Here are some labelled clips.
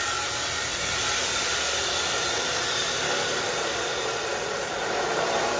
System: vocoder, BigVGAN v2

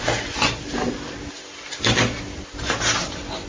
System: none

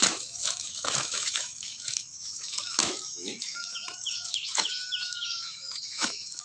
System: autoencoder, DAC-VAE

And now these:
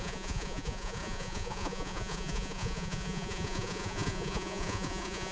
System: vocoder, Vocos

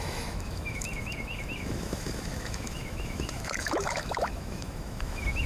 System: autoencoder, DAC-VAE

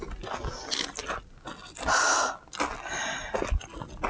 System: none